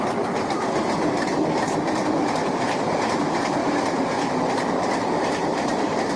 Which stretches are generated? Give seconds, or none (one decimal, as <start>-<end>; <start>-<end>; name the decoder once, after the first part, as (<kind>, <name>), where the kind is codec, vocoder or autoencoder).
none